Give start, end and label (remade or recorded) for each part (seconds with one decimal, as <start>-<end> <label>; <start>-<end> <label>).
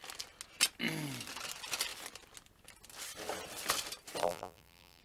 0.0-4.2 recorded; 4.2-5.0 remade